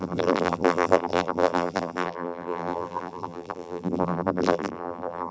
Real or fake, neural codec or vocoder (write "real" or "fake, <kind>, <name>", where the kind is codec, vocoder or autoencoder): fake, vocoder, BigVGAN v2